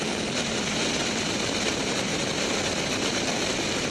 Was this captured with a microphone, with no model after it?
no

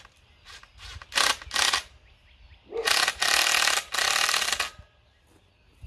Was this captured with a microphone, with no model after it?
yes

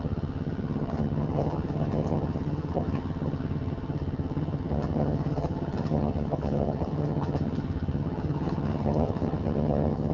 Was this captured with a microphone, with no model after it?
no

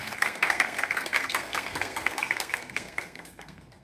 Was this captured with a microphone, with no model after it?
no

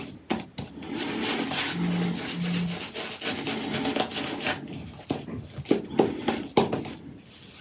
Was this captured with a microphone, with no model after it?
yes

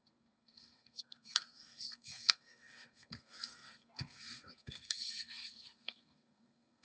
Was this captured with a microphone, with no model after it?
no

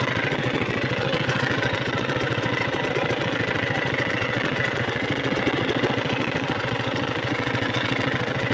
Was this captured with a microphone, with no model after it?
no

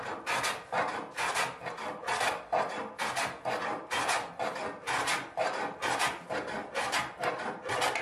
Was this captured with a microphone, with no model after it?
yes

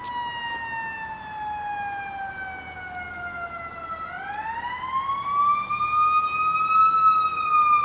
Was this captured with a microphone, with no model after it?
yes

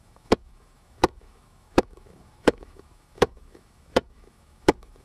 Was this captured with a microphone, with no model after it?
no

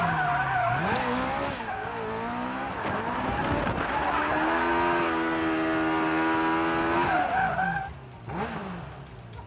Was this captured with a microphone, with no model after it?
yes